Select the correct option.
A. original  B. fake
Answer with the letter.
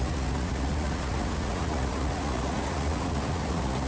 B